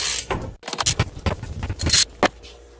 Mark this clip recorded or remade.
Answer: recorded